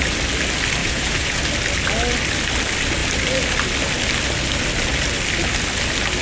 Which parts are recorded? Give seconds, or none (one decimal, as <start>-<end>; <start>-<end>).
0.0-0.8; 1.4-6.2